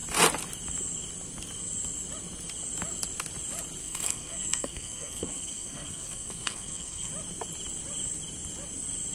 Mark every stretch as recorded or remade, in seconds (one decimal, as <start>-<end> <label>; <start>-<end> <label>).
0.0-3.8 recorded; 3.8-7.1 remade; 7.1-9.1 recorded